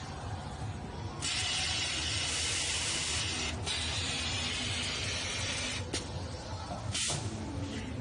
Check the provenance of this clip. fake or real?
real